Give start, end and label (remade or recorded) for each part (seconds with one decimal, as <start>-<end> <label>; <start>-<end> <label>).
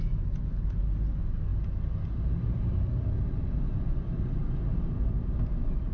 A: 0.0-5.9 recorded